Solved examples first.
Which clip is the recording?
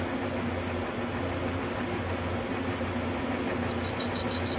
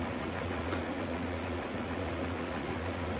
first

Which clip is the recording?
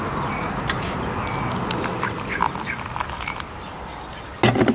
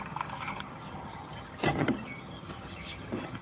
first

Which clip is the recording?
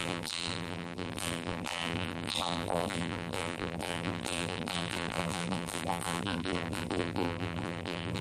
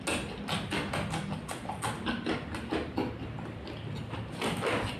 second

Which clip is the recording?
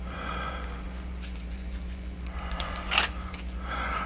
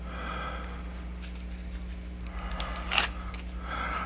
second